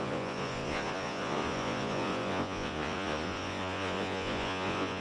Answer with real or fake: fake